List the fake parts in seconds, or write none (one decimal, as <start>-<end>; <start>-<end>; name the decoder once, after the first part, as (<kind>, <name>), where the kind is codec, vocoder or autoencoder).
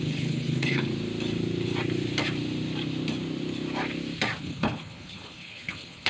0.0-0.9 (codec, HILCodec); 4.4-6.1